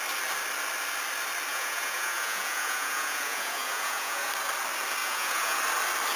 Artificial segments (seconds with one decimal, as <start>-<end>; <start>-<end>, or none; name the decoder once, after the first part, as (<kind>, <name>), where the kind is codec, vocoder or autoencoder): 1.5-4.3 (vocoder, Vocos); 5.0-5.6